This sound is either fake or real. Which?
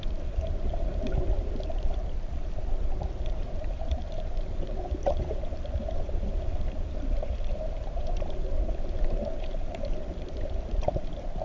fake